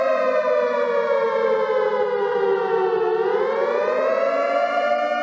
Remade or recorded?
recorded